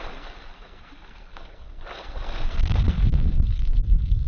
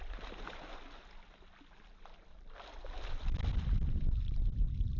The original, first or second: second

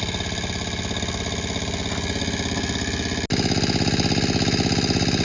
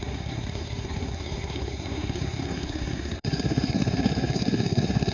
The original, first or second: first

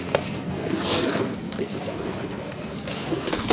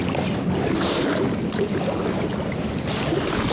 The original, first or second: second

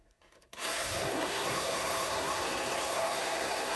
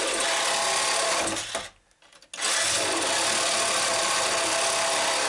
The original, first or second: second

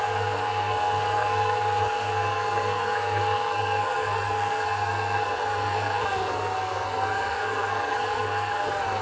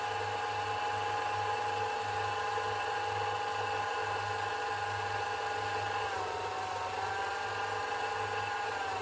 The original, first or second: second